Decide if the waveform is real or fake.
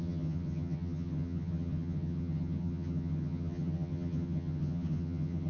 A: fake